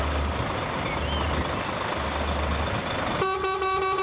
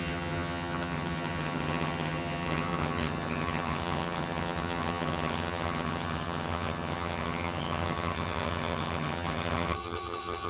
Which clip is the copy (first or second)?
second